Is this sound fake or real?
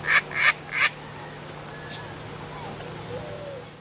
real